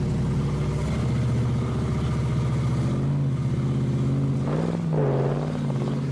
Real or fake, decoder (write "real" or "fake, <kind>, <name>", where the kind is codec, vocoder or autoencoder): real